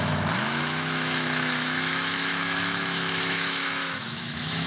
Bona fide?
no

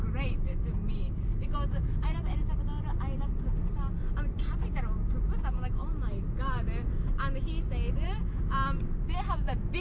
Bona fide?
yes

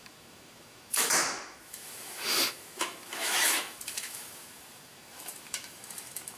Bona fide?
no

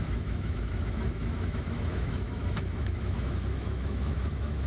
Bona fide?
no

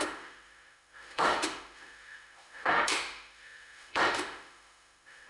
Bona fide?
no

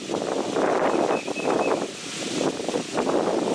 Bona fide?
yes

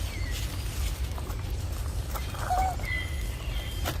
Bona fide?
yes